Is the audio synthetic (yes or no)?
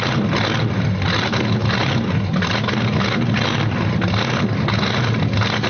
no